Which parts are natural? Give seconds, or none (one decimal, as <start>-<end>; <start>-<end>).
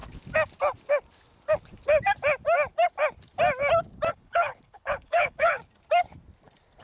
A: 0.0-4.1; 5.6-6.8